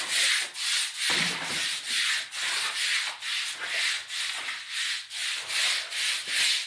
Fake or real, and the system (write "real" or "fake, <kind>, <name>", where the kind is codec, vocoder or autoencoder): real